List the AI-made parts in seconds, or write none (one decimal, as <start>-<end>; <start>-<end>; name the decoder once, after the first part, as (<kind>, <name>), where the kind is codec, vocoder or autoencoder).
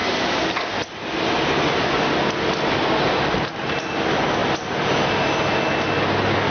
none